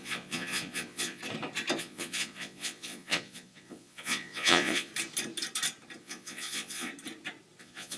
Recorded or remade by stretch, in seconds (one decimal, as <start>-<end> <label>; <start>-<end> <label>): 0.0-1.2 remade; 1.2-1.8 recorded; 1.8-4.9 remade; 4.9-6.0 recorded; 6.0-6.9 remade; 6.9-7.6 recorded; 7.6-8.0 remade